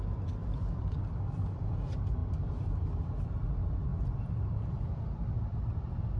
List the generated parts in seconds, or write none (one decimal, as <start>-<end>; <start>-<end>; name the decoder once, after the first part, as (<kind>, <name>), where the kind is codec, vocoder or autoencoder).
0.4-1.7 (vocoder, BigVGAN v2); 3.9-5.6